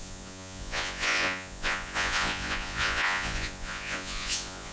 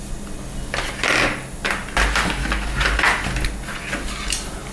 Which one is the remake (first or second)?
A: first